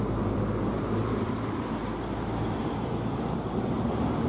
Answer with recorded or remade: remade